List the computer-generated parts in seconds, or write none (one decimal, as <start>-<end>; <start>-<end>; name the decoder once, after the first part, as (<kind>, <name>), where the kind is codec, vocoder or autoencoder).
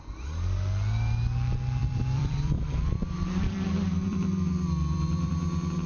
1.8-5.3 (vocoder, BigVGAN v2)